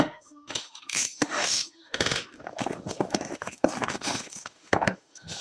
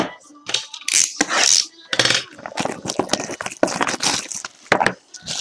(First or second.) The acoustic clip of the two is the second